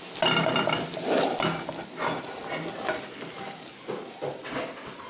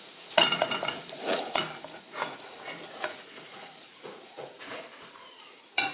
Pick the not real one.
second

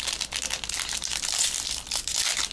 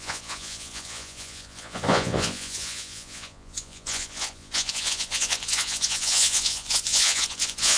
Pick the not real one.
second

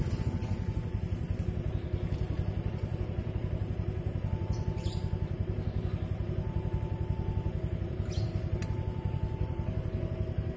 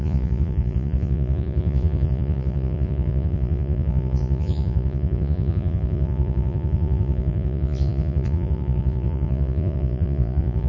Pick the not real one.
second